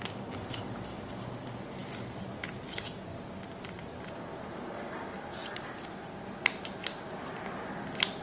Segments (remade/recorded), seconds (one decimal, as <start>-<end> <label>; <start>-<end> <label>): 0.0-1.8 recorded; 1.8-2.4 remade; 2.4-3.8 recorded; 3.8-5.7 remade; 5.7-8.2 recorded